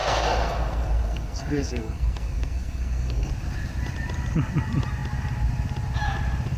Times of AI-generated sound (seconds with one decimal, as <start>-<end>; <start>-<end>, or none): 0.0-3.3